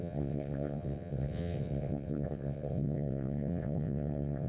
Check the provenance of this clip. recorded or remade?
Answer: remade